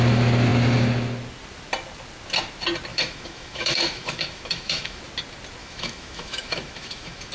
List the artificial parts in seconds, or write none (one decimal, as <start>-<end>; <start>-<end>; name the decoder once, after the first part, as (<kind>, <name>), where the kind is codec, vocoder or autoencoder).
2.9-5.0 (autoencoder, DAC-VAE); 5.6-7.3